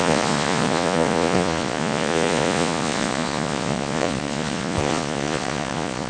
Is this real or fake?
fake